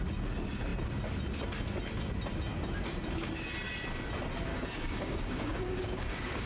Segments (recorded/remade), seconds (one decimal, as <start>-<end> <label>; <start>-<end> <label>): 0.0-4.5 recorded; 4.5-6.5 remade